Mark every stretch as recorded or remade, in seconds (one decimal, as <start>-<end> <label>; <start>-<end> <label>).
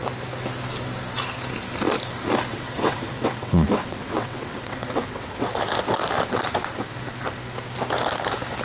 0.0-2.5 recorded; 2.5-5.6 remade; 5.6-8.6 recorded